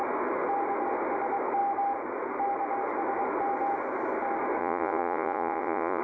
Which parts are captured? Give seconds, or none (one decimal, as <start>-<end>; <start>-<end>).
0.0-4.6